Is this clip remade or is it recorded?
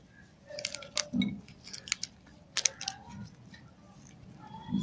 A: recorded